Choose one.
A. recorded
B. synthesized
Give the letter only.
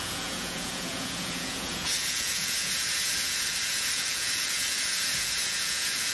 B